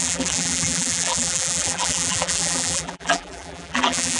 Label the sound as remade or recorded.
remade